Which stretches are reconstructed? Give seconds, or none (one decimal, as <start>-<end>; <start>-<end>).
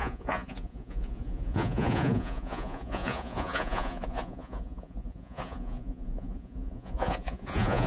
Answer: 0.0-7.9